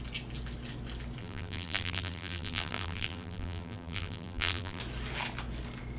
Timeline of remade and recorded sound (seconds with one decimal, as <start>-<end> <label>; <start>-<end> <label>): 0.0-1.2 recorded; 1.2-4.8 remade; 4.8-6.0 recorded